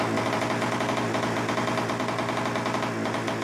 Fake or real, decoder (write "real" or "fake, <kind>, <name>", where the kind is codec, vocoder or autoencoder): real